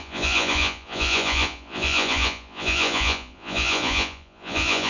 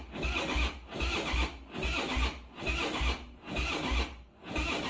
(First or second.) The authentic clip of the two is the second